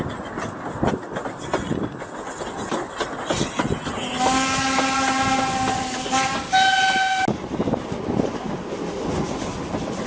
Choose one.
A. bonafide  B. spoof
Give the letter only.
A